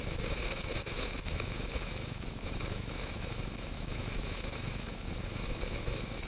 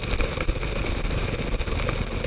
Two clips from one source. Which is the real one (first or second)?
second